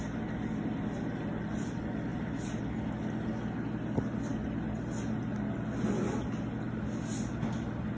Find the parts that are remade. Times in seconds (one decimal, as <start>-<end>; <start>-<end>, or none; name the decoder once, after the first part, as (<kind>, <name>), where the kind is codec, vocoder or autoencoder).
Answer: none